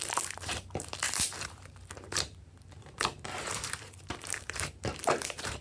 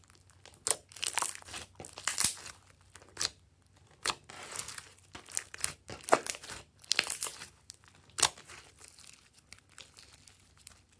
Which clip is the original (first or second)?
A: second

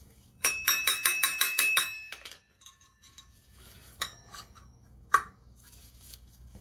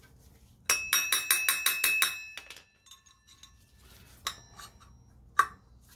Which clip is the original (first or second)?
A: second